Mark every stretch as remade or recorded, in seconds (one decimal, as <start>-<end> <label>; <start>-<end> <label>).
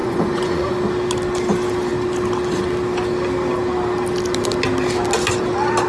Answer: 0.0-0.7 remade; 0.7-5.9 recorded